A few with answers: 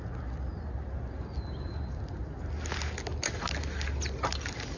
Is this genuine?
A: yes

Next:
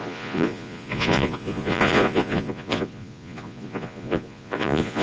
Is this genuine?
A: no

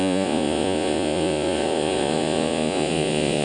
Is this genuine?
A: no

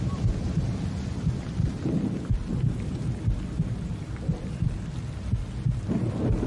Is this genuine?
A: yes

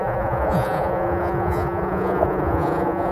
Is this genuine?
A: no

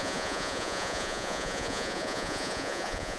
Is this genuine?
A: no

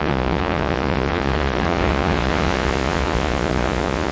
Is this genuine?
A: no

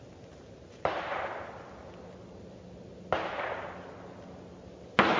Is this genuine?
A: yes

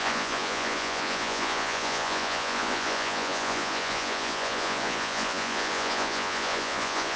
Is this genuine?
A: no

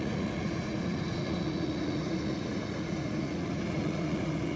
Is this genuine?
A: no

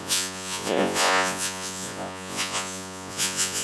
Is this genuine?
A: no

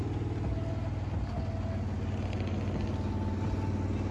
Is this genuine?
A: yes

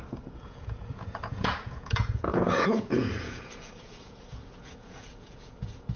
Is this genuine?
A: no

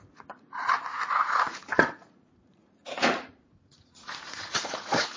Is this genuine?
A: no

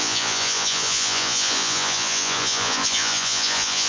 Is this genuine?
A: no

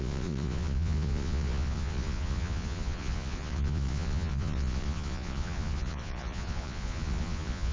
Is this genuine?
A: no